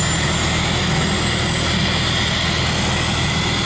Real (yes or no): yes